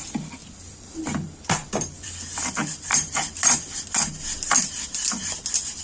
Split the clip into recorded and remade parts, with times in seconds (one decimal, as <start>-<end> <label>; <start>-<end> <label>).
0.0-0.4 recorded; 0.4-3.9 remade; 3.9-5.8 recorded